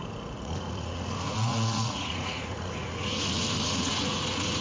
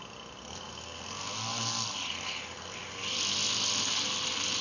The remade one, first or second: first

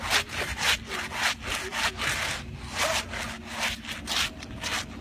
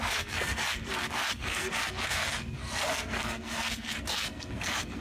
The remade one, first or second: second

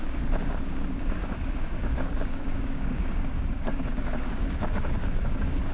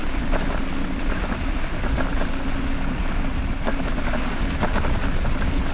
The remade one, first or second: first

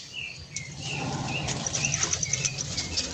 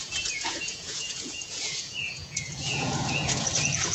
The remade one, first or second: second